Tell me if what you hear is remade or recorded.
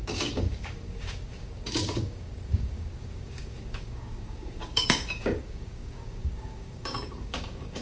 remade